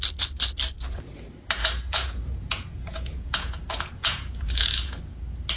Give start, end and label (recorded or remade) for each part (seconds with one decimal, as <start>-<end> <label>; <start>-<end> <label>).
0.0-1.6 recorded; 1.6-5.0 remade; 5.0-5.6 recorded